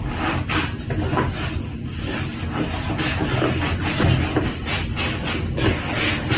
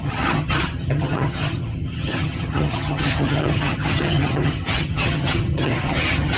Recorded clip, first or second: first